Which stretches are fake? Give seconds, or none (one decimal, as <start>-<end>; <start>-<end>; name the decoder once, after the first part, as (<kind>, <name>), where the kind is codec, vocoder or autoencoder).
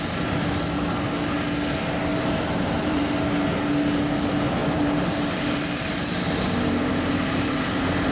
2.1-3.0 (vocoder, BigVGAN v2); 4.6-7.6